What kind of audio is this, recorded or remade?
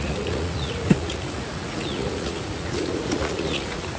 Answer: remade